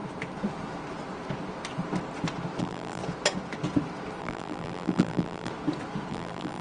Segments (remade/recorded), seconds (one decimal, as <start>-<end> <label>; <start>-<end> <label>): 0.0-2.6 recorded; 2.6-3.0 remade; 3.0-4.2 recorded; 4.2-5.5 remade; 5.5-6.1 recorded; 6.1-6.6 remade